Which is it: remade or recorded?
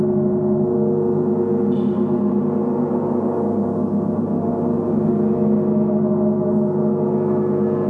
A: recorded